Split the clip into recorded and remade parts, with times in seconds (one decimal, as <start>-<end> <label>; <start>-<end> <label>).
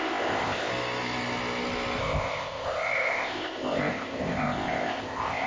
0.0-0.7 remade; 0.7-2.0 recorded; 2.0-5.5 remade